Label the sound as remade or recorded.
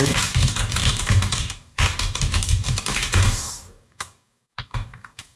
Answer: remade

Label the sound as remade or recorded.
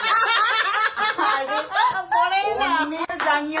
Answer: recorded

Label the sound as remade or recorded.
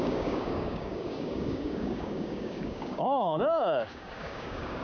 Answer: remade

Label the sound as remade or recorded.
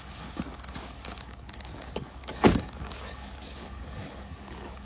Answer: remade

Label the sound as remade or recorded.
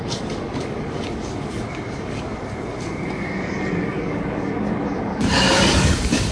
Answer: remade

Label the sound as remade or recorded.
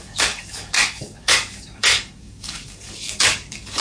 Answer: remade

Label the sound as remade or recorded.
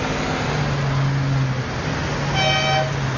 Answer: recorded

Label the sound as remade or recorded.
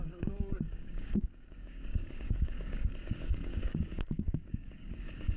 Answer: remade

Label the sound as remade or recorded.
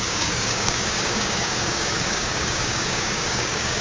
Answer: remade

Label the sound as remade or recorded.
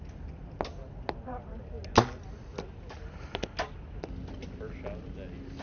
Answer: recorded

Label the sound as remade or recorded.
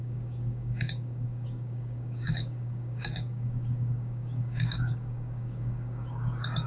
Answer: remade